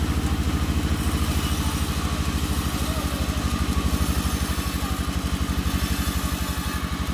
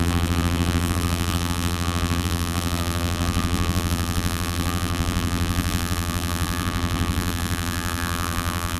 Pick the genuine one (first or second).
first